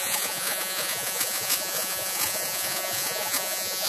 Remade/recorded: remade